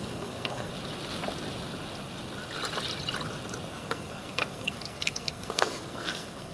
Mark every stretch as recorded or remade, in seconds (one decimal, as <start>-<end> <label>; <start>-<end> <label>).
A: 0.0-0.7 remade; 0.7-3.7 recorded; 3.7-6.5 remade